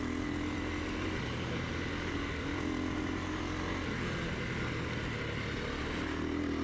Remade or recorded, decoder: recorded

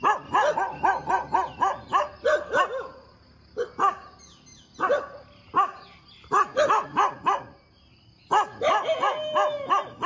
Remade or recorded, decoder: recorded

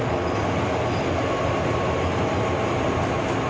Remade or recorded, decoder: recorded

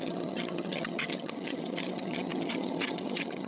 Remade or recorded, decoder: remade, vocoder, HiFi-GAN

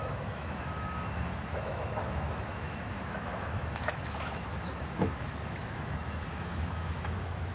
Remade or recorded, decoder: remade, autoencoder, DAC-VAE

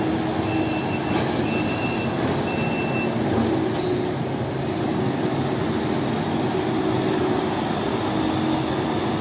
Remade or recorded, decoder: recorded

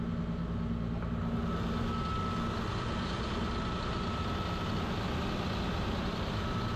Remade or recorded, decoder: recorded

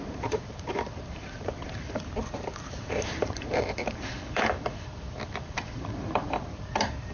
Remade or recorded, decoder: remade, vocoder, BigVGAN v2